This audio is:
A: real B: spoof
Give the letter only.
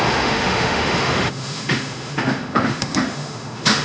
B